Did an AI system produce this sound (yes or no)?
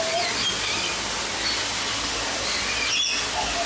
no